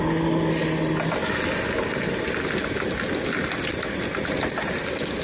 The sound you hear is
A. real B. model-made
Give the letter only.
A